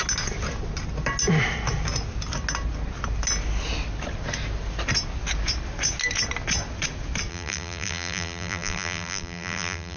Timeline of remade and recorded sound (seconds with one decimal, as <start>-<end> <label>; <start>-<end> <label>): 0.0-7.3 recorded; 7.3-10.0 remade